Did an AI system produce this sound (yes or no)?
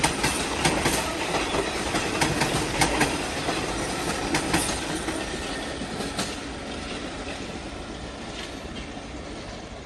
no